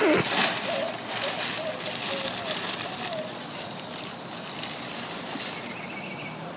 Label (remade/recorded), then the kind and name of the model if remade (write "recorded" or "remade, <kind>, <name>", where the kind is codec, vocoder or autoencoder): recorded